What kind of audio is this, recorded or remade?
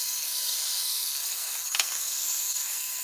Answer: remade